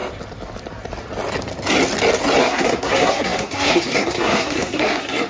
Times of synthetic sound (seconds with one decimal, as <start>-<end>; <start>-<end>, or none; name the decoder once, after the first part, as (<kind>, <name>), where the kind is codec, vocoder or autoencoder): 2.4-5.3 (codec, SNAC)